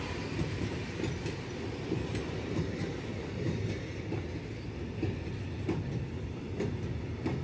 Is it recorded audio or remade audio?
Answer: recorded